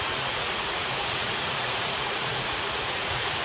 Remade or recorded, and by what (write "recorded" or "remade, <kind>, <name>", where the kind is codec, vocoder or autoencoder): remade, vocoder, Vocos